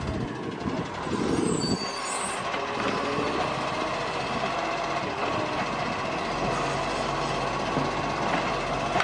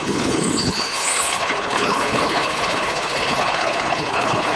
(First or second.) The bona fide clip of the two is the first